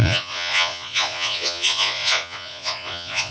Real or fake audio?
fake